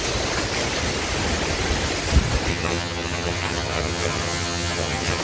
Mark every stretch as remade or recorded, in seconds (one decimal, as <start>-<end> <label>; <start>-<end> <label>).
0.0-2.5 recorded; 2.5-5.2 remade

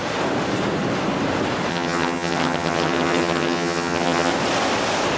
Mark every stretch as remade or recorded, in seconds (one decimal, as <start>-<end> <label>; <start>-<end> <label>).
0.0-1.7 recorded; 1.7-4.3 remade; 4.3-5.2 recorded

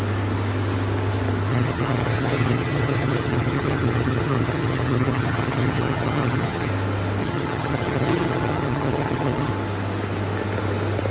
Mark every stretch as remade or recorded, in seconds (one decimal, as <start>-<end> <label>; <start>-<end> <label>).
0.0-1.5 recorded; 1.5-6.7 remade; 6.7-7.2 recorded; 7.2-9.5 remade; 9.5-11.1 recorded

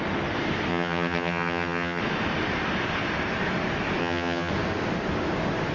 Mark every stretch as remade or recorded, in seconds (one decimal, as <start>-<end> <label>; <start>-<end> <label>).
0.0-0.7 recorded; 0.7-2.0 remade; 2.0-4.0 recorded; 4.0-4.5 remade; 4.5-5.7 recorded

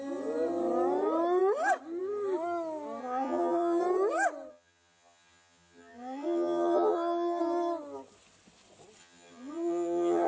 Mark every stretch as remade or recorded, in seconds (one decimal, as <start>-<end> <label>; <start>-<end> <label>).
0.0-3.0 recorded; 3.0-3.8 remade; 3.8-4.5 recorded; 4.5-7.4 remade; 7.4-9.0 recorded; 9.0-10.3 remade